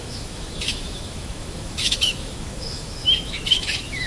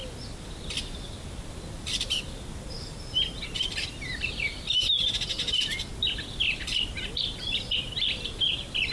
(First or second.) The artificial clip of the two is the first